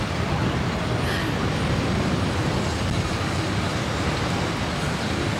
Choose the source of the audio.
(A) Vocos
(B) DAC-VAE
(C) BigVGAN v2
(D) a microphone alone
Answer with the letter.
D